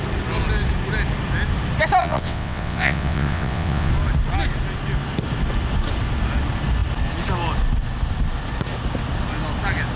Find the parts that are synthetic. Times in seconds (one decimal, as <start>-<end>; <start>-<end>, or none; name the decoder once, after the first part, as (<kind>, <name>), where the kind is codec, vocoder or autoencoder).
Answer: 2.0-3.9 (vocoder, WaveNeXt)